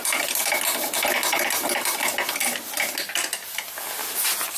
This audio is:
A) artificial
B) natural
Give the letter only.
B